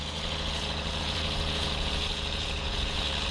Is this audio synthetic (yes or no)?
yes